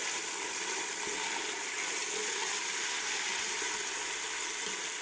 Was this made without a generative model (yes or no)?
yes